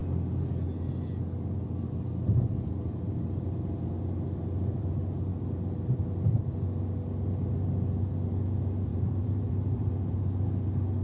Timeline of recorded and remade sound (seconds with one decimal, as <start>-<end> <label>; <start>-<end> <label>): 0.0-8.9 recorded; 8.9-9.9 remade; 9.9-11.0 recorded

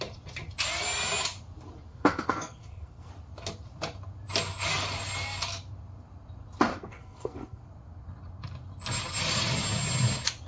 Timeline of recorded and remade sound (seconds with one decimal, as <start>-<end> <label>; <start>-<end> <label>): 0.0-1.9 recorded; 1.9-3.1 remade; 3.1-6.7 recorded; 6.7-7.6 remade; 7.6-10.5 recorded

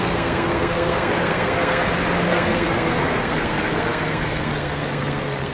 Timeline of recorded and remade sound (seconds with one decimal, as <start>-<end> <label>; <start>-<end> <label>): 0.0-1.8 remade; 1.8-2.3 recorded; 2.3-5.5 remade

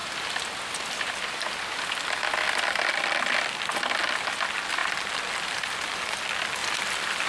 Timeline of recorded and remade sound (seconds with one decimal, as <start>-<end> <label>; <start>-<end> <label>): 0.0-1.5 remade; 1.5-6.6 recorded; 6.6-7.3 remade

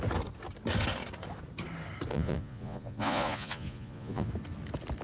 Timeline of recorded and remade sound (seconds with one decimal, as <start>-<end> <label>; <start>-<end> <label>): 0.0-2.1 recorded; 2.1-4.3 remade; 4.3-5.0 recorded

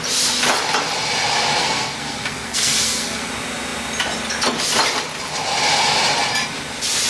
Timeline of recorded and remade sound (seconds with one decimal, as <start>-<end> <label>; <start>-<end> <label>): 0.0-1.6 recorded; 1.6-3.3 remade; 3.3-7.1 recorded

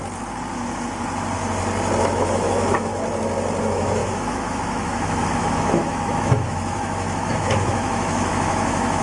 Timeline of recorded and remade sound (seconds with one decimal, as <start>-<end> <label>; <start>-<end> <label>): 0.0-2.0 recorded; 2.0-2.9 remade; 2.9-3.6 recorded; 3.6-9.0 remade

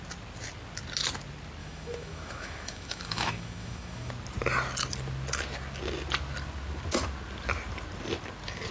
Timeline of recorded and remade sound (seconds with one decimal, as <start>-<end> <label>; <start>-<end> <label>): 0.0-1.6 recorded; 1.6-4.1 remade; 4.1-8.7 recorded